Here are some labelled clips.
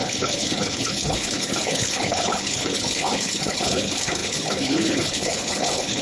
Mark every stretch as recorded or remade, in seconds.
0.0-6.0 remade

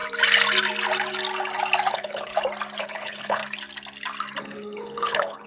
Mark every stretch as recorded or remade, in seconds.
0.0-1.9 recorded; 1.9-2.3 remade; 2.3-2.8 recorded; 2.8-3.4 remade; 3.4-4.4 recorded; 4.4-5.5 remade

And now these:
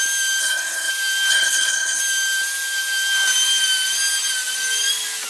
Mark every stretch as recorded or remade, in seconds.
0.0-0.4 recorded; 0.4-0.9 remade; 0.9-1.3 recorded; 1.3-2.0 remade; 2.0-5.3 recorded

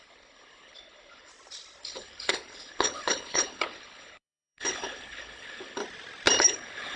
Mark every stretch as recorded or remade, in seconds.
0.0-1.3 remade; 1.3-1.8 recorded; 1.8-5.8 remade; 5.8-6.4 recorded; 6.4-7.0 remade